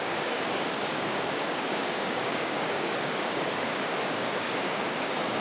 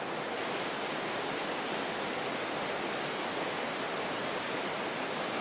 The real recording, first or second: second